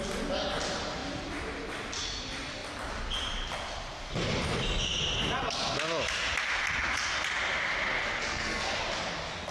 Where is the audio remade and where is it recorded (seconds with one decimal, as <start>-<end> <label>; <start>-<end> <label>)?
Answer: 0.0-8.0 recorded; 8.0-8.8 remade; 8.8-9.5 recorded